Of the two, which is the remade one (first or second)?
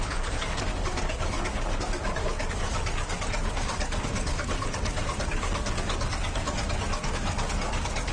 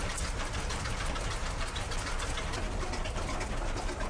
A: first